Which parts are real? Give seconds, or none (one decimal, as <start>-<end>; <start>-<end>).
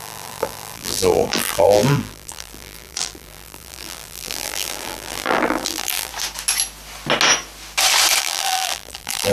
6.1-8.2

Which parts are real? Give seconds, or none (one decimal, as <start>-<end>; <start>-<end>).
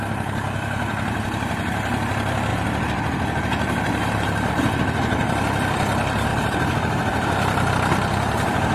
none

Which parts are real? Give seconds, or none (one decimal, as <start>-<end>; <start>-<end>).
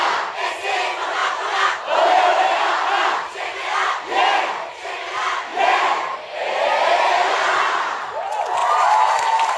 0.0-1.2; 2.7-5.5; 7.1-8.6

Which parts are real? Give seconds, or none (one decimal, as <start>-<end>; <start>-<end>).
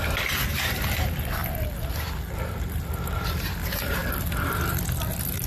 4.0-4.7